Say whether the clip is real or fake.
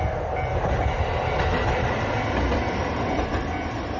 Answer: real